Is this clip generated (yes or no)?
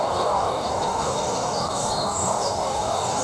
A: yes